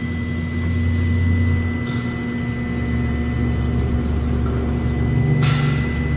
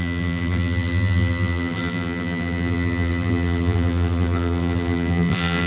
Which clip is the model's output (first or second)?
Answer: second